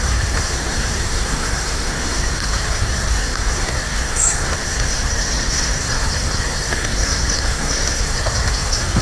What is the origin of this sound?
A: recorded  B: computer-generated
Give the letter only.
B